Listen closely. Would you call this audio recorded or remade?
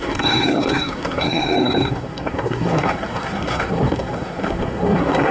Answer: remade